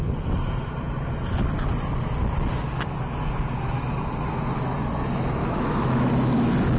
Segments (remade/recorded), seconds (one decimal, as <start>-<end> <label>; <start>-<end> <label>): 0.0-5.4 recorded; 5.4-6.1 remade; 6.1-6.8 recorded